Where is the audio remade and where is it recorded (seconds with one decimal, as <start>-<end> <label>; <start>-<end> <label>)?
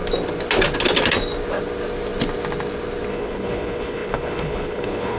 0.0-3.1 recorded; 3.1-5.2 remade